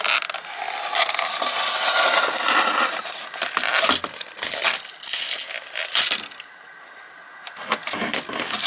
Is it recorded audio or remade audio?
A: recorded